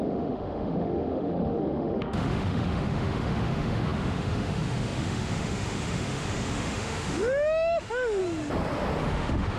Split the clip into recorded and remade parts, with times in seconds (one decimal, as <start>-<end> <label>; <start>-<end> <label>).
0.0-8.2 remade; 8.2-9.0 recorded; 9.0-9.6 remade